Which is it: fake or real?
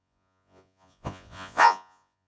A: fake